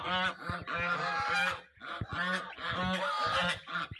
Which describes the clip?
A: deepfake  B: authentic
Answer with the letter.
B